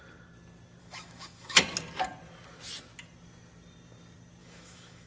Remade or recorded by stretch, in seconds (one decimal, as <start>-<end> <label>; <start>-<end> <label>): 0.0-0.8 recorded; 0.8-1.6 remade; 1.6-4.4 recorded; 4.4-5.1 remade